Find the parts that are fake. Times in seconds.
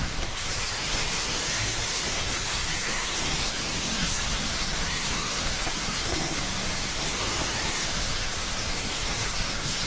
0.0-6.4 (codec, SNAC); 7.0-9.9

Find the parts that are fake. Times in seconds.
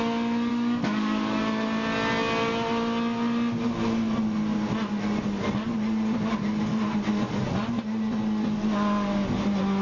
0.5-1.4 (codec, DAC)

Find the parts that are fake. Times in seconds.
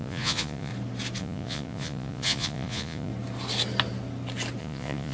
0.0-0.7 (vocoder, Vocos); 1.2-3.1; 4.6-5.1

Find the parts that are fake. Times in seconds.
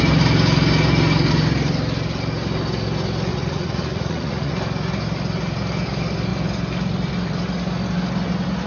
3.3-4.5 (vocoder, Vocos)